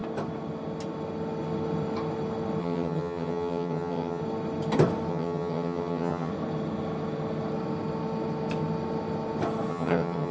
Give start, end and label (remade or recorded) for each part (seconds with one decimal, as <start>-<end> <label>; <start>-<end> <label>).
0.0-2.6 recorded; 2.6-4.2 remade; 4.2-5.1 recorded; 5.1-6.3 remade; 6.3-9.7 recorded; 9.7-10.3 remade